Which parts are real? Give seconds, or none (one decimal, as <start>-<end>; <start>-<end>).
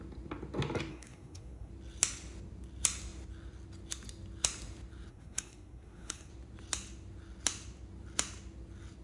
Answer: 0.0-0.9; 1.7-5.1; 6.3-9.0